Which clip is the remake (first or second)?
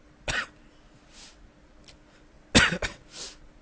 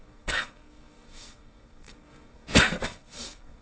second